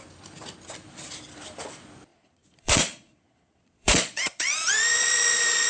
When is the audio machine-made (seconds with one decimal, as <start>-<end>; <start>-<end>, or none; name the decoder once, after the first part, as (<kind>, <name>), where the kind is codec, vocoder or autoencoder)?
2.1-5.7 (vocoder, Vocos)